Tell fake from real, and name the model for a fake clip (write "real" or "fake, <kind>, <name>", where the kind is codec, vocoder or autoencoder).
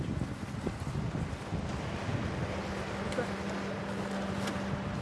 real